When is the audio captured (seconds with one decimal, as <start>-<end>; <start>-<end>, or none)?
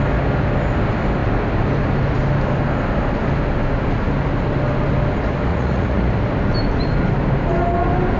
0.0-5.5; 6.1-8.2